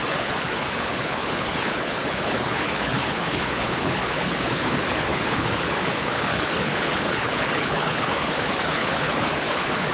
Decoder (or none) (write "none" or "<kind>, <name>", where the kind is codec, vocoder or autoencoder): codec, HILCodec